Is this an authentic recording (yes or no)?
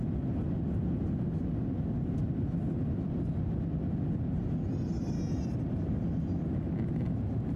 yes